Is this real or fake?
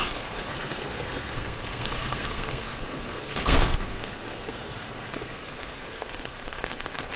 fake